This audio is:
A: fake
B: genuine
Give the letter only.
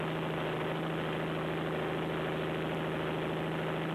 B